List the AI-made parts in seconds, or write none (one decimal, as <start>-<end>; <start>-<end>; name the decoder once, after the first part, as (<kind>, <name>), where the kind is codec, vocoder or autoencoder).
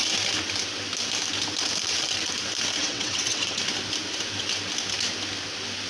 2.8-3.6 (vocoder, WaveNeXt)